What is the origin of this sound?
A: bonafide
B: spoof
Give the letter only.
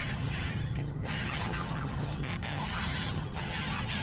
B